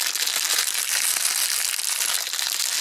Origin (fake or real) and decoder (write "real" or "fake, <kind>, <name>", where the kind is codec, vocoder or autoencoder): real